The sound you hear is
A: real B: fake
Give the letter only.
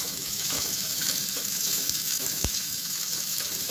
B